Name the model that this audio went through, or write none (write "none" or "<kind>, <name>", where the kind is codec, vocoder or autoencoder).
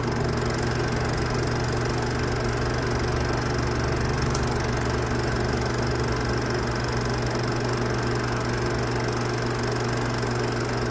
none